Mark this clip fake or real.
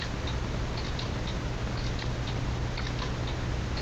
real